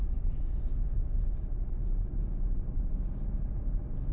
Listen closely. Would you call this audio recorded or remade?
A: recorded